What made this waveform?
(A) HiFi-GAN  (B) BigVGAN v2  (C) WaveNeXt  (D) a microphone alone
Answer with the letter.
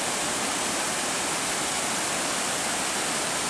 D